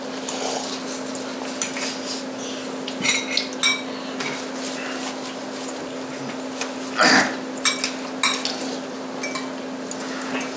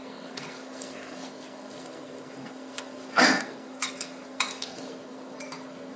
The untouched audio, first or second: first